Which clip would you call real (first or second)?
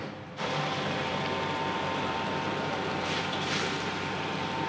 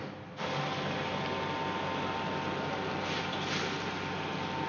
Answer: second